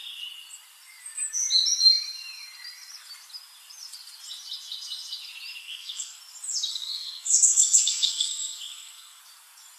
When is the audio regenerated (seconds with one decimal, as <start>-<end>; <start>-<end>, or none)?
5.6-6.2; 6.7-9.2